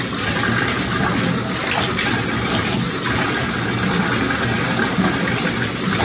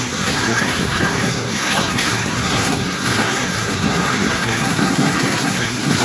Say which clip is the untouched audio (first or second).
first